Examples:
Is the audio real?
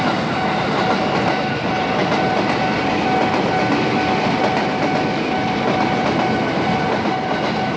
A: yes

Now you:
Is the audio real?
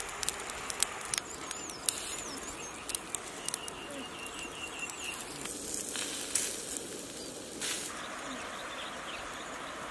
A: yes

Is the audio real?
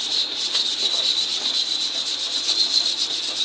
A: yes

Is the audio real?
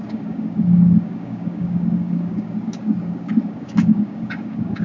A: no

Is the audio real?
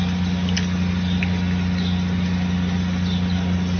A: yes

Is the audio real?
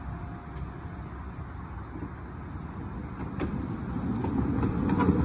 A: yes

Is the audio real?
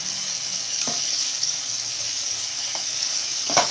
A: no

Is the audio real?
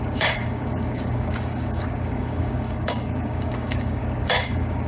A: no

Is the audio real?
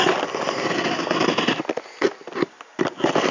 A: yes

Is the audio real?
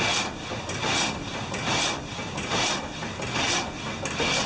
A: yes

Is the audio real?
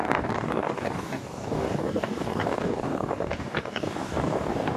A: no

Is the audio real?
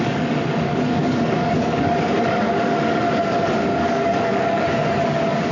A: no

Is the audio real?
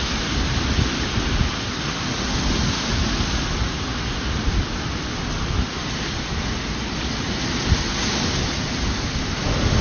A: yes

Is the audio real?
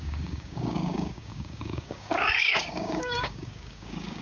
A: no